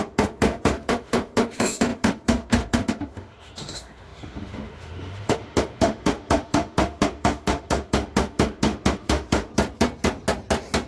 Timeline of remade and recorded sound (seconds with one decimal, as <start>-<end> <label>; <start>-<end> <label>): 0.0-9.5 remade; 9.5-10.9 recorded